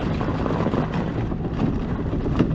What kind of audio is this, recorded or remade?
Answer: recorded